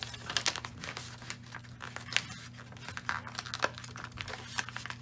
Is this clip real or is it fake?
real